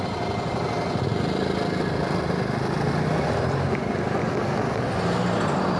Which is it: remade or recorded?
recorded